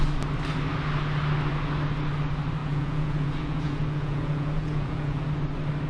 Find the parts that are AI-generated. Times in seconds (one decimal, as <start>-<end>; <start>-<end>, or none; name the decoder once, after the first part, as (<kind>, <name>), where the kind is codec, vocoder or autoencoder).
2.6-5.3 (vocoder, Vocos)